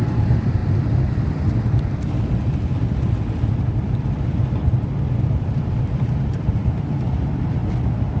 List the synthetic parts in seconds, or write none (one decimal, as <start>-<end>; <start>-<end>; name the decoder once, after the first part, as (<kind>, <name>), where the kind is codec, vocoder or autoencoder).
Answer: 0.0-0.6 (vocoder, BigVGAN v2); 5.1-7.6